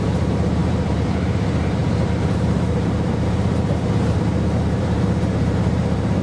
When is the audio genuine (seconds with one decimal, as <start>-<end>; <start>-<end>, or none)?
none